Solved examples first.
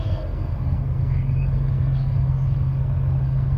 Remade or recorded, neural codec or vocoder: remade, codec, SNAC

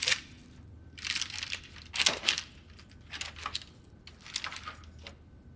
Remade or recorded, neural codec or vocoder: recorded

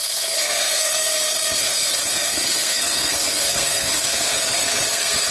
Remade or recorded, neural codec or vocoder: remade, codec, SNAC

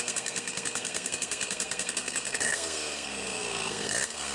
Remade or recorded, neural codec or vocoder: remade, codec, SNAC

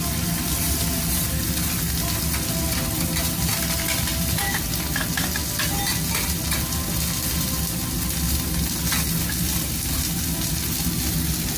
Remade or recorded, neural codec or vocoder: recorded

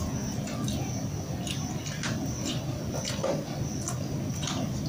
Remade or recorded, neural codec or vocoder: recorded